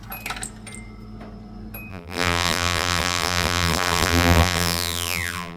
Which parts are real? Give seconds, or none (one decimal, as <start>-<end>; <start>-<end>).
0.0-1.9